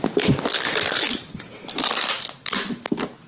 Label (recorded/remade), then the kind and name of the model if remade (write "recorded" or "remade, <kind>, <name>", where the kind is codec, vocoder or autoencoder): recorded